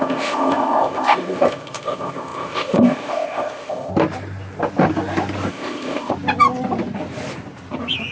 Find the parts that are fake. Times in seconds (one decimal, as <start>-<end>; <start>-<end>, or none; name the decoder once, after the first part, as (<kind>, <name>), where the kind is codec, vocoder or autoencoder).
0.0-3.9 (codec, ZipCodec); 5.5-6.1